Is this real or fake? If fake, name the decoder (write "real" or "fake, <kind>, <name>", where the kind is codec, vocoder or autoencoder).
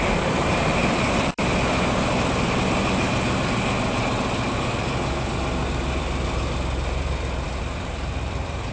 fake, vocoder, BigVGAN v2